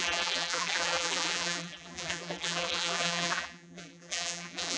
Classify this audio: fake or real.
fake